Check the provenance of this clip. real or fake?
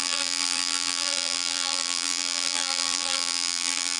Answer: fake